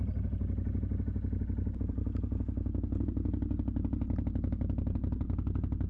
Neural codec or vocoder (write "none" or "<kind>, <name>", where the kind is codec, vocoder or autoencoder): none